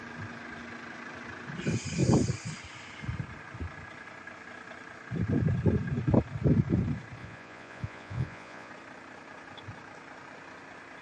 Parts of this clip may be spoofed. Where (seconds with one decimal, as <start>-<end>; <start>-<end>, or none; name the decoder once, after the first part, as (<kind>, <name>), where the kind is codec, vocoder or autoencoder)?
7.2-8.7 (vocoder, Vocos)

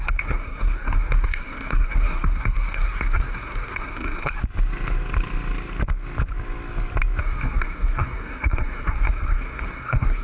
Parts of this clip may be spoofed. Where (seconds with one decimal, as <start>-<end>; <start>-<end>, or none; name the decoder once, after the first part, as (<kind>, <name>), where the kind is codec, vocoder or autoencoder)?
0.0-4.4 (codec, SNAC); 7.2-10.2

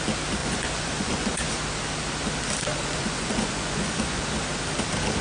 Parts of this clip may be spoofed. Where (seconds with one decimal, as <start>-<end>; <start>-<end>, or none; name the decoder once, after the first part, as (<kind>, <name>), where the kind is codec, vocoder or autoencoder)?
0.4-1.5 (vocoder, Vocos); 2.7-4.2

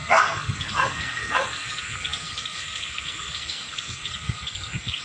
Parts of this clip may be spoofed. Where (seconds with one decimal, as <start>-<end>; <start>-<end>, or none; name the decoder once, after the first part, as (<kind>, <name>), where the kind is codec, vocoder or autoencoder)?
0.0-5.0 (codec, SNAC)

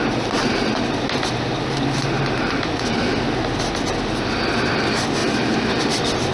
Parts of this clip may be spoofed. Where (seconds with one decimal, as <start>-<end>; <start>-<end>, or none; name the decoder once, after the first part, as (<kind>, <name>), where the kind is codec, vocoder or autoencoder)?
none